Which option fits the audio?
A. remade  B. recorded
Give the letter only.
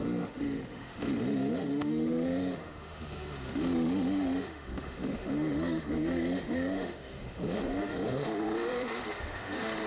A